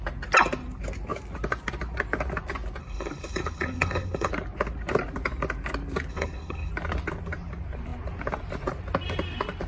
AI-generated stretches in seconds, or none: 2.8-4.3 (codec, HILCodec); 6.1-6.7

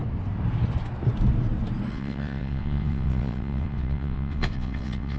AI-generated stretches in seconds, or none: 1.9-5.2 (vocoder, WaveNeXt)

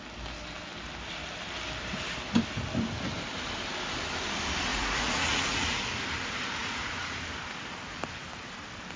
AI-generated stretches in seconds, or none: 4.7-5.8 (vocoder, Vocos); 6.6-7.2

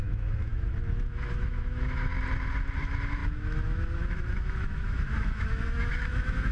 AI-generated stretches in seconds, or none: 0.0-2.1 (autoencoder, DAC-VAE); 2.8-6.5

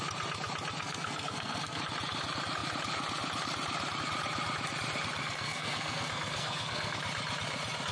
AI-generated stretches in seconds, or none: 0.8-1.8 (codec, SNAC); 5.2-7.0

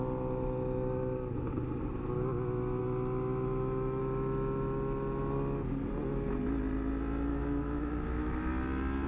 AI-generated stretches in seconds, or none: 2.8-4.0 (autoencoder, DAC-VAE); 7.3-8.5